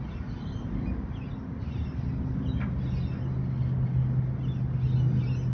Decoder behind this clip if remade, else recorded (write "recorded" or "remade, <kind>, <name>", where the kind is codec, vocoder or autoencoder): recorded